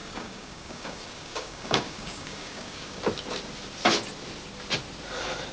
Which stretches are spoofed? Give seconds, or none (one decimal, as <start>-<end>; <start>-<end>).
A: 0.0-3.0